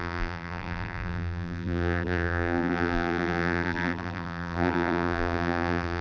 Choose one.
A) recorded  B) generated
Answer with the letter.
B